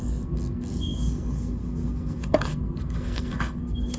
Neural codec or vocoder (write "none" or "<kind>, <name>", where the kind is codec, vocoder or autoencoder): codec, SNAC